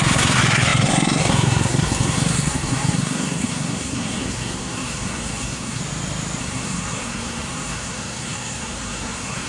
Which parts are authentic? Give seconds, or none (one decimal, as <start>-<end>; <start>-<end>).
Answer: 5.8-6.4